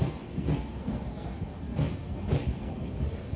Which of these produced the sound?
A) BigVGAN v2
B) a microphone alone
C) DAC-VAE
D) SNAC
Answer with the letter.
D